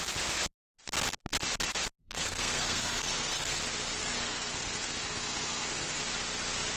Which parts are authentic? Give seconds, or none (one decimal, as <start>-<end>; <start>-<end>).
0.0-2.0; 3.6-4.0; 6.0-6.8